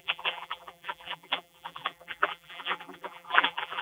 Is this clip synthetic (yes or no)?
yes